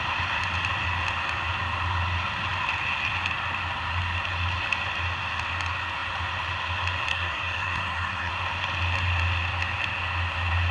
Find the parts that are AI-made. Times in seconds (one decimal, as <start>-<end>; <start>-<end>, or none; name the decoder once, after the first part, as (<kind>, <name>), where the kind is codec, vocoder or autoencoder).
7.1-8.3 (codec, SNAC)